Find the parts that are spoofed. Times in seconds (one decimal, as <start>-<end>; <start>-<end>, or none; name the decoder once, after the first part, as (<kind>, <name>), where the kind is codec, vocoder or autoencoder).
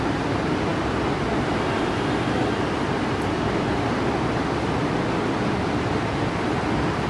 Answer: none